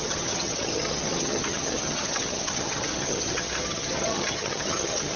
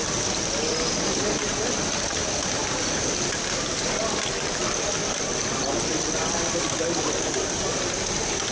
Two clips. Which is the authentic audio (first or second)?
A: second